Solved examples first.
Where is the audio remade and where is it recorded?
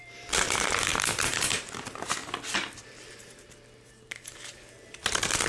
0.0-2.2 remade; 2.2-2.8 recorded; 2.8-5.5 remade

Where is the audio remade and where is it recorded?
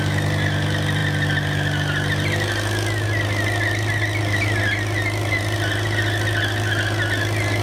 0.0-7.6 recorded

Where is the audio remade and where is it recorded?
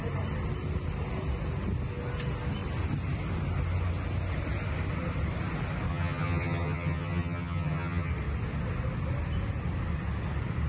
0.0-5.9 recorded; 5.9-8.1 remade; 8.1-10.7 recorded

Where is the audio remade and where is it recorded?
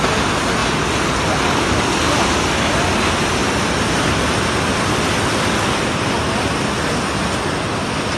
0.0-8.2 recorded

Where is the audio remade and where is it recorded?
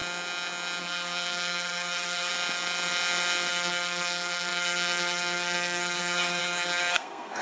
0.0-0.8 recorded; 0.8-2.3 remade; 2.3-3.5 recorded; 3.5-7.4 remade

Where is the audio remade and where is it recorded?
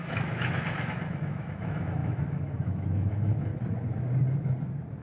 0.0-3.5 remade; 3.5-5.0 recorded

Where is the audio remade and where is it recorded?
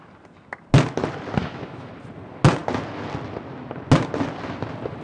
0.0-1.4 recorded; 1.4-1.9 remade; 1.9-5.0 recorded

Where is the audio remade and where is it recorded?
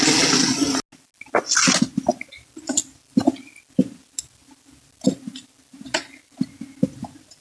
0.0-7.4 recorded